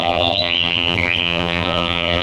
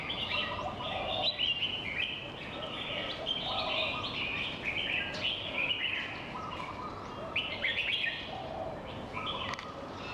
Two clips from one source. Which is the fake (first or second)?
first